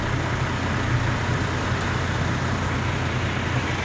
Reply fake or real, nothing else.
real